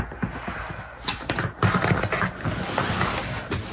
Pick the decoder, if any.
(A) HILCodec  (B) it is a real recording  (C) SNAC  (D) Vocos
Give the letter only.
B